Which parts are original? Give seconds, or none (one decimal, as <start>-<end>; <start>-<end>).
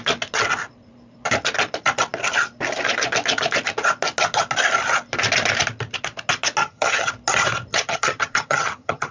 0.0-6.6; 7.1-7.7